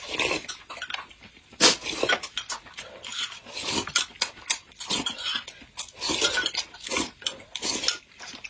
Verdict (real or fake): real